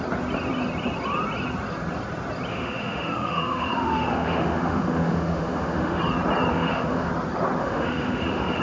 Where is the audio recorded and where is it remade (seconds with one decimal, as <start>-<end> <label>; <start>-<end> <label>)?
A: 0.0-2.5 recorded; 2.5-6.0 remade; 6.0-6.5 recorded; 6.5-7.1 remade; 7.1-7.6 recorded; 7.6-8.6 remade